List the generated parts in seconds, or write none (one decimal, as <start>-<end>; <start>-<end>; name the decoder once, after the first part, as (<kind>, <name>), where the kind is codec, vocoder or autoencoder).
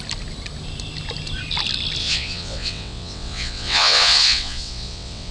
2.0-5.3 (vocoder, WaveNeXt)